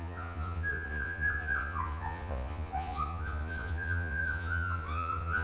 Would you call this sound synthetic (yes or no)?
yes